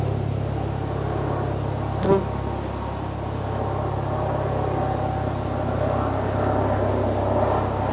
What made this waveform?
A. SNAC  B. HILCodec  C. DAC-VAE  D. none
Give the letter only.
D